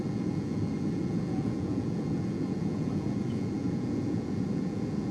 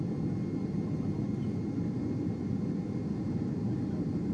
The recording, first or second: second